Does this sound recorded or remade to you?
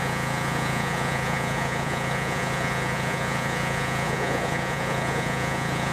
remade